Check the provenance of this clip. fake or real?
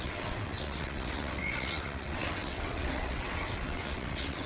fake